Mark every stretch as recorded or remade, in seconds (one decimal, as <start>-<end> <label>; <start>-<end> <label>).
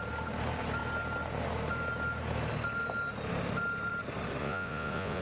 0.0-4.4 recorded; 4.4-5.2 remade